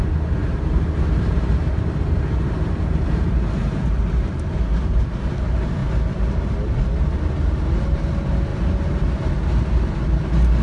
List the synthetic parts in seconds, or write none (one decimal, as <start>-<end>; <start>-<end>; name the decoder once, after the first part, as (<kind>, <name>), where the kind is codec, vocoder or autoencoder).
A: 0.4-5.3 (vocoder, BigVGAN v2); 8.5-9.1